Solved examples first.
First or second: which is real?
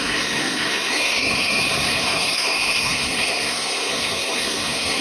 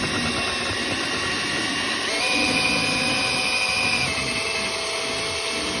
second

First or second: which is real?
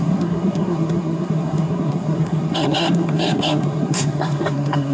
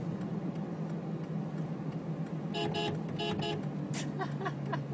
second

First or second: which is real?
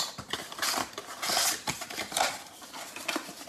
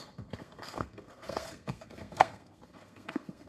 first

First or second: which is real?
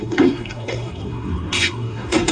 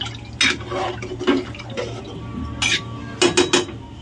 second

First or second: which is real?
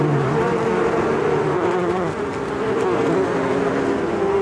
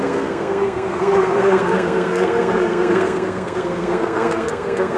first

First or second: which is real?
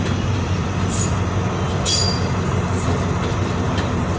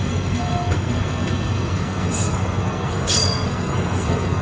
first